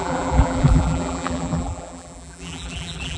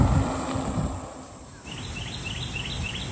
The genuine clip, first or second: second